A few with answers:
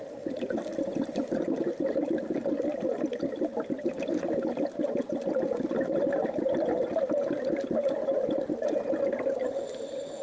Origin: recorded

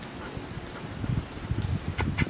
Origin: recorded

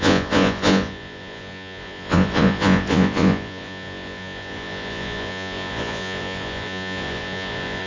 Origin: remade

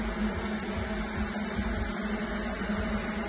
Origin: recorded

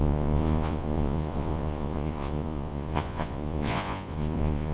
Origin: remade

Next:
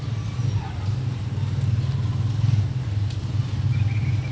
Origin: recorded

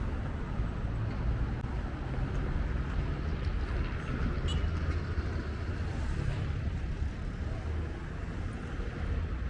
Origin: recorded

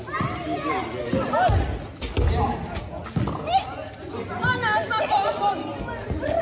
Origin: recorded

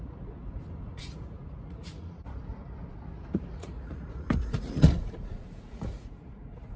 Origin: remade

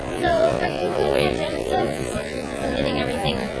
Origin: remade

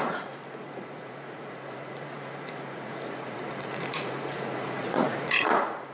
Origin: remade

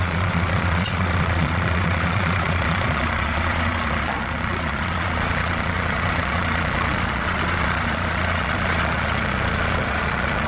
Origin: remade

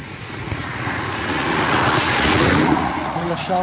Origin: remade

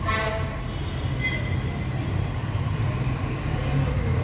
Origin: recorded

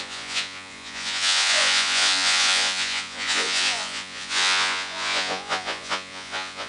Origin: remade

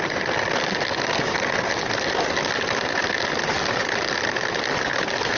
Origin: recorded